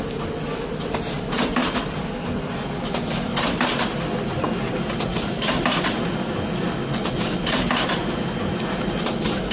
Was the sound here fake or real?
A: real